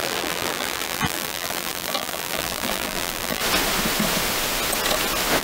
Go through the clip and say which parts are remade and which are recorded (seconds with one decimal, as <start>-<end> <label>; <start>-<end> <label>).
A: 0.0-3.4 remade; 3.4-5.4 recorded